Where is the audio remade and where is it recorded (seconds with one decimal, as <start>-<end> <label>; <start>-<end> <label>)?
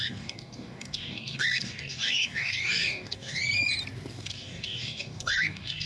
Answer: 0.0-3.4 remade; 3.4-4.1 recorded; 4.1-5.9 remade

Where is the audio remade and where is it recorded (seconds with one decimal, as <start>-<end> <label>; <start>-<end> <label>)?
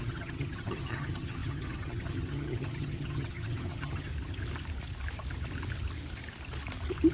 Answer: 0.0-4.1 remade; 4.1-7.1 recorded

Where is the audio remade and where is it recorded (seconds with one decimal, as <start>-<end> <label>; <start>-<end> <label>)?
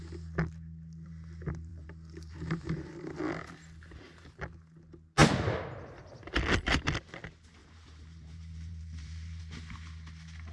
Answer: 0.0-1.7 recorded; 1.7-3.2 remade; 3.2-7.6 recorded; 7.6-9.4 remade; 9.4-10.5 recorded